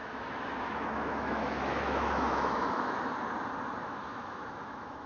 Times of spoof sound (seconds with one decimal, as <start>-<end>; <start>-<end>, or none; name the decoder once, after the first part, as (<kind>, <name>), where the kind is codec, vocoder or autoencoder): 0.0-3.1 (autoencoder, DAC-VAE); 3.8-5.1